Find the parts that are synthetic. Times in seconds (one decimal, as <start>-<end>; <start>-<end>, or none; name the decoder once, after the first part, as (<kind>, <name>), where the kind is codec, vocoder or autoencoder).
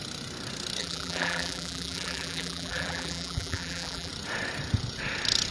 0.8-4.1 (vocoder, BigVGAN v2)